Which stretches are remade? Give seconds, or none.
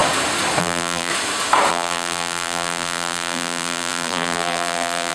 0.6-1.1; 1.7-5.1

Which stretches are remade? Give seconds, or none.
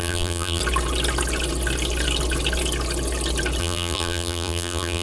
0.0-0.6; 3.6-5.0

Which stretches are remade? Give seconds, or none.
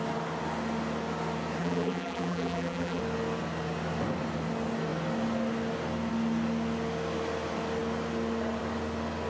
1.6-3.0